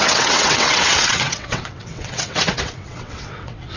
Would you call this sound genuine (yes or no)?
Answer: no